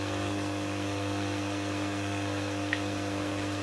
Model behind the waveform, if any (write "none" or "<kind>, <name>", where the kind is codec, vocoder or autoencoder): codec, SNAC